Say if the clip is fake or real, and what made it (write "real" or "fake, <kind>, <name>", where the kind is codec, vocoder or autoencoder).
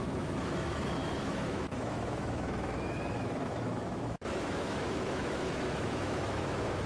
fake, autoencoder, DAC-VAE